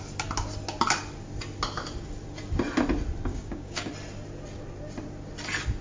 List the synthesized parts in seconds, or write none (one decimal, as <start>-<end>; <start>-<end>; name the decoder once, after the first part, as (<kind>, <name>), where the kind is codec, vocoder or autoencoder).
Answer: 3.3-3.9 (codec, DAC)